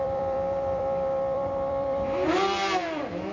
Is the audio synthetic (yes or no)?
yes